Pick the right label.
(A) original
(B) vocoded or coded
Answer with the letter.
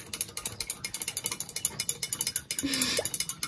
A